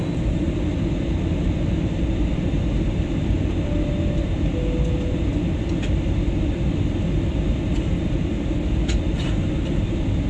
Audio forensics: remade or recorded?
recorded